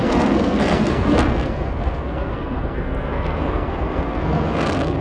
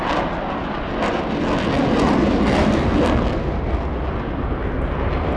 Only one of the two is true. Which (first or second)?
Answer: second